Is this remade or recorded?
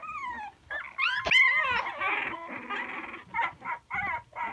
recorded